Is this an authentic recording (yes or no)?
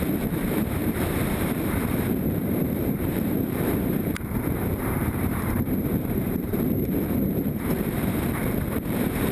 no